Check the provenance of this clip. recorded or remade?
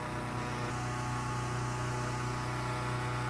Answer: recorded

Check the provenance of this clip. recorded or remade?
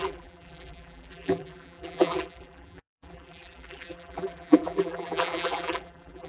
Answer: remade